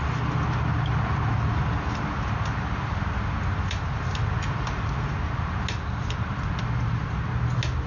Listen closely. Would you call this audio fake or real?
real